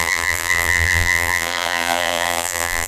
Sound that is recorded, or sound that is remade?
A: remade